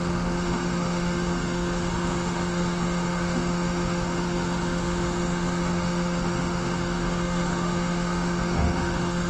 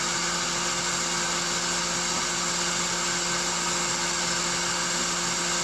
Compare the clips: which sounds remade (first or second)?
first